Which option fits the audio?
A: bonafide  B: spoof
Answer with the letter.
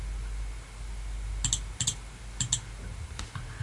A